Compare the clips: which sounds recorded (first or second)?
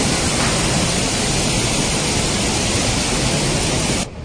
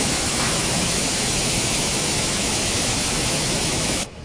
first